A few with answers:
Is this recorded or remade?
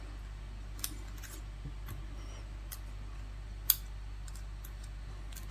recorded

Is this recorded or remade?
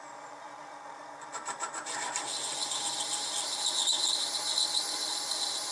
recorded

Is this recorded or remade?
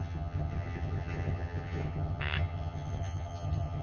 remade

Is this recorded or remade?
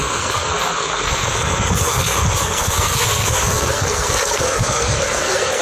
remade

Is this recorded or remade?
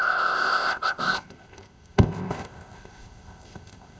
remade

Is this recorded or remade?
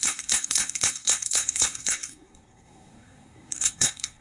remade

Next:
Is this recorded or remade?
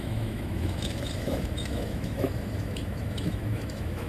remade